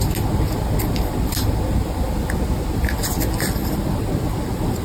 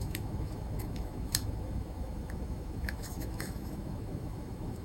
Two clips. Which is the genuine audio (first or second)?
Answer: first